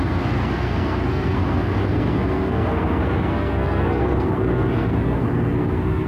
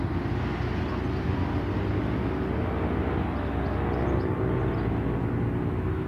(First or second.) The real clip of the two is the second